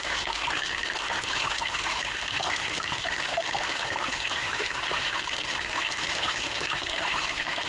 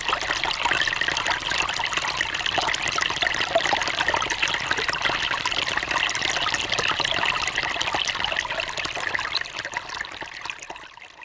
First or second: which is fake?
first